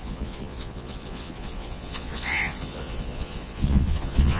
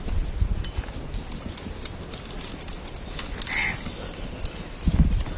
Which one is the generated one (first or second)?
first